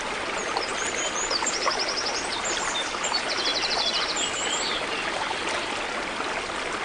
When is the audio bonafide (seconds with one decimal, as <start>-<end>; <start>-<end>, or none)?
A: 0.0-6.8